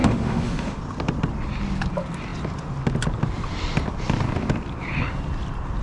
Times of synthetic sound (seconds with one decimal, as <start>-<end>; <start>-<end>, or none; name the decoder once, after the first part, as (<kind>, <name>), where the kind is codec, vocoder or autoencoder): 0.0-0.8 (autoencoder, DAC-VAE)